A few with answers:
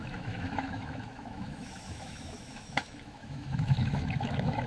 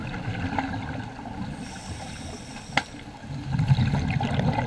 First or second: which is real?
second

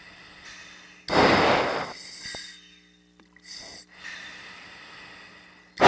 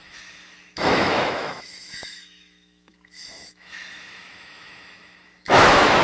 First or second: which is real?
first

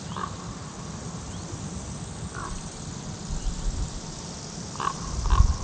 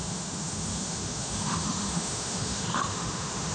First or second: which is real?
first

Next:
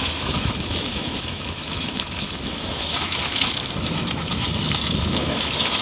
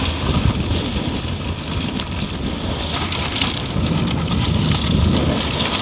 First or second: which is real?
second